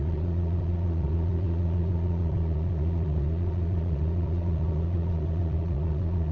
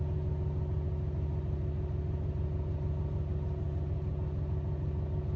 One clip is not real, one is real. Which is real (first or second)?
second